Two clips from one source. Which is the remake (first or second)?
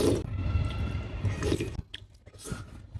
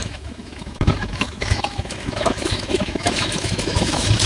second